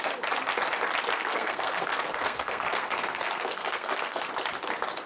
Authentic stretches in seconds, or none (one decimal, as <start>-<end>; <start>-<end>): 0.0-1.2; 4.3-5.1